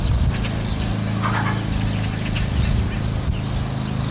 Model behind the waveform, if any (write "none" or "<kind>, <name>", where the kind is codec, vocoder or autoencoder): none